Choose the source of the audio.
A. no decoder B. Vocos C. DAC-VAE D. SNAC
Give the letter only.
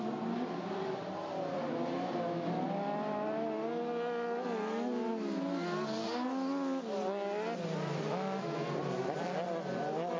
A